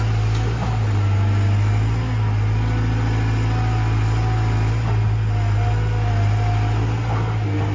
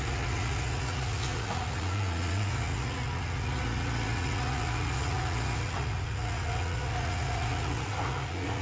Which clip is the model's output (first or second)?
second